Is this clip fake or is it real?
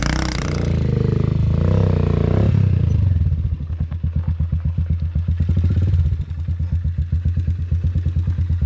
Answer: real